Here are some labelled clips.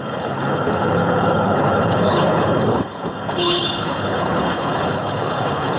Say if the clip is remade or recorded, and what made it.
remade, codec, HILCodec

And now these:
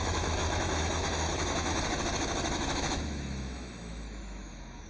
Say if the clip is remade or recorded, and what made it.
remade, autoencoder, DAC-VAE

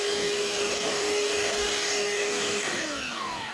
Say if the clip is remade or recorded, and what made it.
remade, codec, DAC